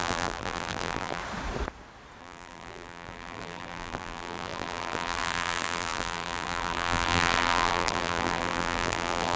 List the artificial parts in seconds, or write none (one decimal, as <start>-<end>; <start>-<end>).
0.0-1.2; 2.2-9.4